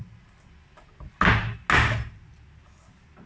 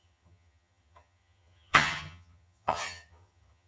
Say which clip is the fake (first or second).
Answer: second